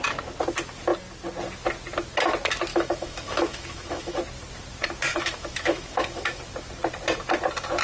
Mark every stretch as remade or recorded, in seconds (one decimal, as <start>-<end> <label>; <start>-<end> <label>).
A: 0.0-2.7 recorded; 2.7-4.2 remade; 4.2-5.1 recorded; 5.1-6.4 remade; 6.4-7.8 recorded